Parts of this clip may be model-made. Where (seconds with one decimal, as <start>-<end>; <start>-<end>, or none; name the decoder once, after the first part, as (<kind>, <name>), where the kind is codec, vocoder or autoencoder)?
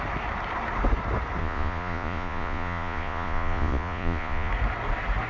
1.4-4.5 (vocoder, Vocos)